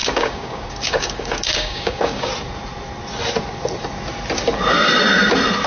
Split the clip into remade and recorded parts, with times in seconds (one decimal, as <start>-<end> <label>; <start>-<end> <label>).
0.0-2.3 remade; 2.3-5.7 recorded